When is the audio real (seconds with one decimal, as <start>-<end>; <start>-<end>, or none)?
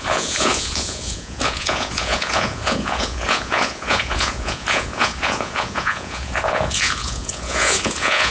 none